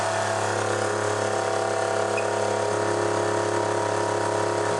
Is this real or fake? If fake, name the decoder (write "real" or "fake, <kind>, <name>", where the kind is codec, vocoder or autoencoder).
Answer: real